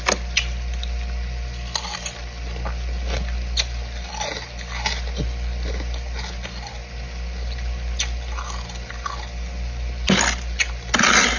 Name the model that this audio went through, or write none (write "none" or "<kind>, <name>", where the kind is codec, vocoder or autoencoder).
none